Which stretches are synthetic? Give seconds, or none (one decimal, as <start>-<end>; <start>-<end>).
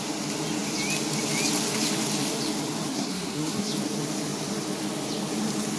2.9-3.7